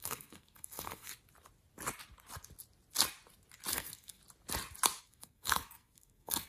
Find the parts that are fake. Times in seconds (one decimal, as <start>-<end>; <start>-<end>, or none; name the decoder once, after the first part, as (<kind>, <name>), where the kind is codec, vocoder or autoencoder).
0.0-1.1 (codec, SNAC); 3.7-4.2; 5.0-6.5